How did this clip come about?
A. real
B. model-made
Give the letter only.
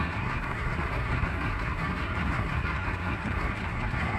B